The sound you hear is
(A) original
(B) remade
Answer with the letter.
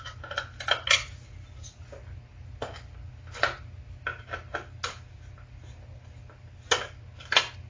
A